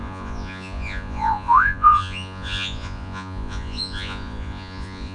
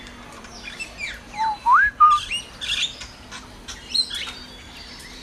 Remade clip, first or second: first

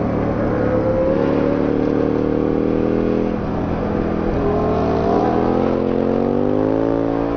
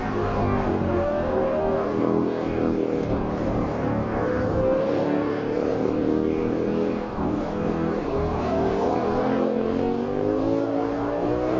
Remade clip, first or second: second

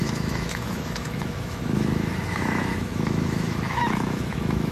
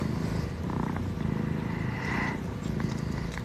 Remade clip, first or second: first